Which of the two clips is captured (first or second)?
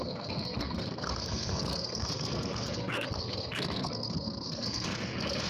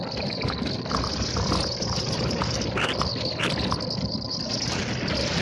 second